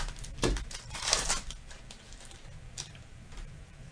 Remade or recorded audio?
remade